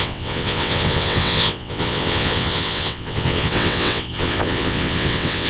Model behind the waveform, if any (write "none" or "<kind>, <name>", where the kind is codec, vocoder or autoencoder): vocoder, WaveNeXt